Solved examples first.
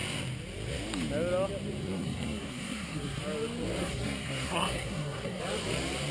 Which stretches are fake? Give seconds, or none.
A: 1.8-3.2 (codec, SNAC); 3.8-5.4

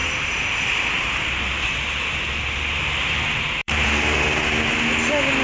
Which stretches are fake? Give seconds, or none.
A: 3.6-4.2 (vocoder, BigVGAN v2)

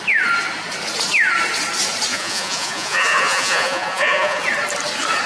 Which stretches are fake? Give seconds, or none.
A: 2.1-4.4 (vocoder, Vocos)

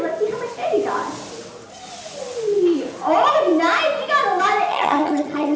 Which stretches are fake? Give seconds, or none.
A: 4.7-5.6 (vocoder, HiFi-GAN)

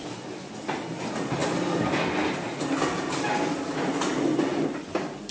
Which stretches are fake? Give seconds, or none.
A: none

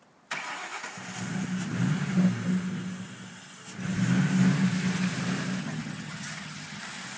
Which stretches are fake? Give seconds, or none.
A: 5.6-6.8 (vocoder, HiFi-GAN)

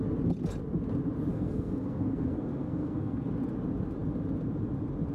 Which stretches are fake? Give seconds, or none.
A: 1.3-3.3 (codec, SNAC)

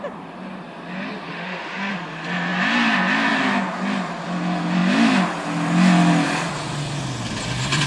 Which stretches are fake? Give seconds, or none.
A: 1.3-1.9 (autoencoder, DAC-VAE)